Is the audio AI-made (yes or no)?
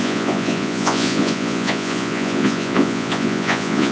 yes